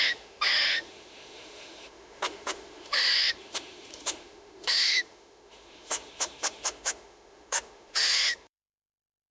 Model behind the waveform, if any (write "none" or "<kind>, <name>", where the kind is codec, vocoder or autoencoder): autoencoder, DAC-VAE